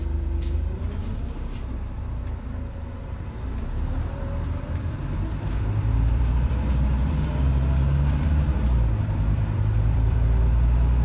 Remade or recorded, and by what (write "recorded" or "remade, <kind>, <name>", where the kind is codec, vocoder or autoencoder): remade, vocoder, BigVGAN v2